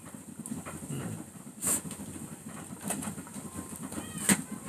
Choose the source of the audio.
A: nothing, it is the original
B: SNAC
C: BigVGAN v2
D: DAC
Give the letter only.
A